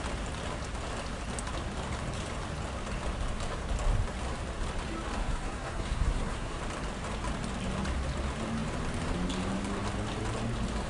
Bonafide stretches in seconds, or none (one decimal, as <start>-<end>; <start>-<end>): 0.0-5.2; 6.6-10.9